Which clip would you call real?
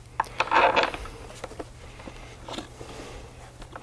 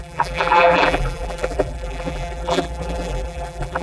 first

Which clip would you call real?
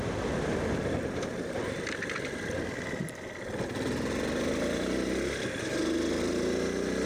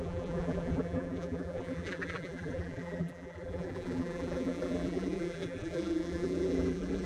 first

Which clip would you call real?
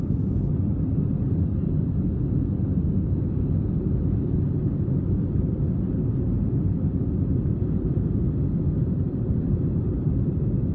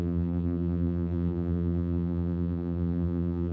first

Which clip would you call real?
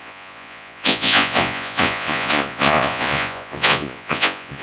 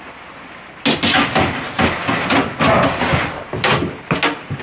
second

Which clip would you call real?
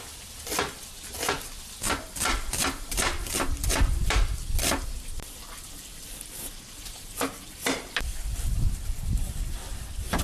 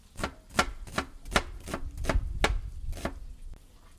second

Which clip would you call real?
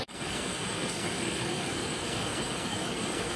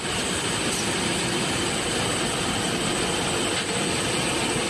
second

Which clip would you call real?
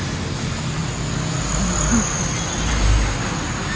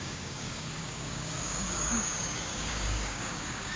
first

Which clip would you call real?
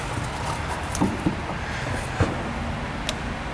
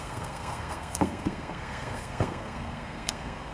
first